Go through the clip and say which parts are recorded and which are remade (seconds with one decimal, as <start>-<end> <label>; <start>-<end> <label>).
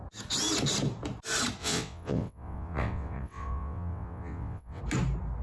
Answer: 0.0-1.6 recorded; 1.6-4.8 remade; 4.8-5.4 recorded